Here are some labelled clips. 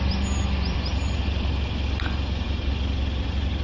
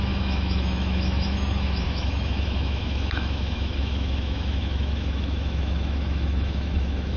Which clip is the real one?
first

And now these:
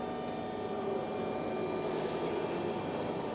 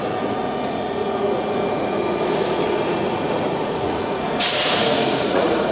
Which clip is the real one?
first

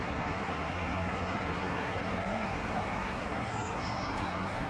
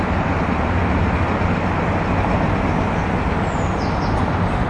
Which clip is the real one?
second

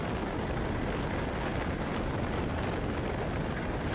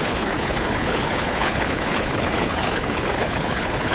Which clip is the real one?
first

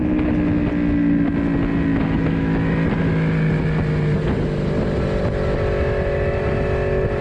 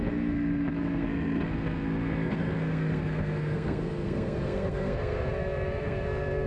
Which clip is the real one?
first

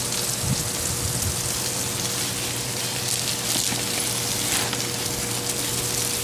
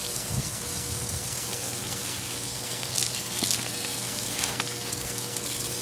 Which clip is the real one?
first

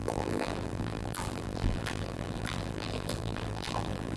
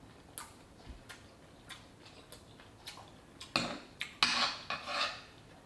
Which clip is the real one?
second